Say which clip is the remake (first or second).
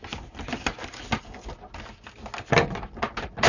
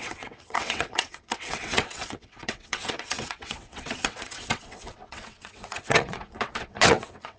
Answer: second